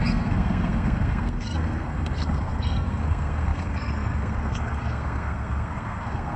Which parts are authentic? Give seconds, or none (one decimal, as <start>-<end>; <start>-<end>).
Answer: none